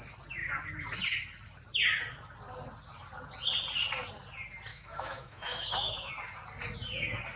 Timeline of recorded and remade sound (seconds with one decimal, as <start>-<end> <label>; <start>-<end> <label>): 0.0-4.7 recorded; 4.7-6.1 remade; 6.1-7.4 recorded